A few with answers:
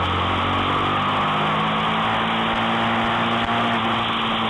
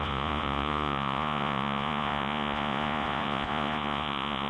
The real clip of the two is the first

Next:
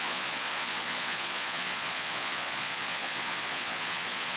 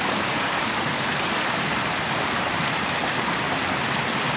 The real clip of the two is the second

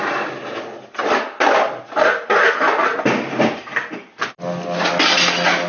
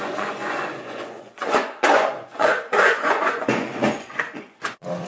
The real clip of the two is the first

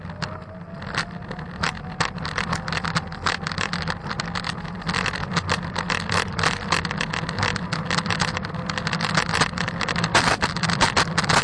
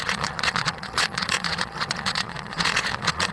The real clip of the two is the first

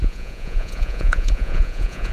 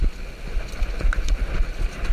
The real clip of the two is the second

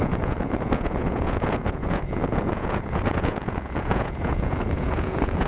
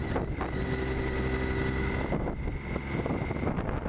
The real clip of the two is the second